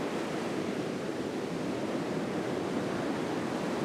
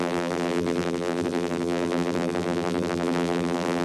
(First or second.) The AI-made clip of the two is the second